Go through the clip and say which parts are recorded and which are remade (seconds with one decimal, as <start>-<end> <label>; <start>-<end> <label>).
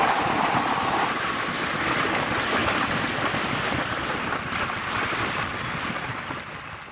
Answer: 0.0-6.9 recorded